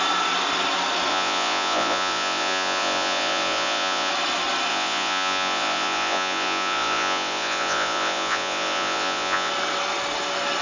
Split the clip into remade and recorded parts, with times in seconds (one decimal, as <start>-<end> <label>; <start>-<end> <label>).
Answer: 0.0-1.1 recorded; 1.1-4.1 remade; 4.1-4.7 recorded; 4.7-9.5 remade; 9.5-10.6 recorded